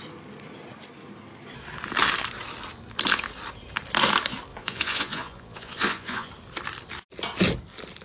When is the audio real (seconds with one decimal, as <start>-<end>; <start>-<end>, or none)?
0.0-4.5; 6.3-8.0